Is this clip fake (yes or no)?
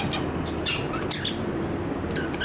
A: no